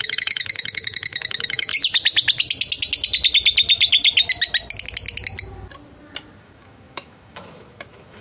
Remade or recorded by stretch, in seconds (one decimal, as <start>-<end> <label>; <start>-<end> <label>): 0.0-1.7 remade; 1.7-6.4 recorded; 6.4-8.2 remade